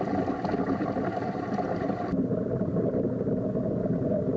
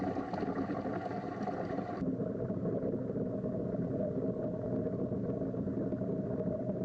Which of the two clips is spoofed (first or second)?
first